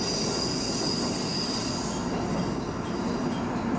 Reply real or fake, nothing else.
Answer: real